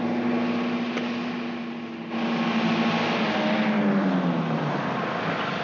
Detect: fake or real real